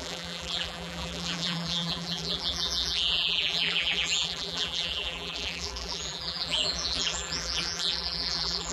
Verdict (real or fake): fake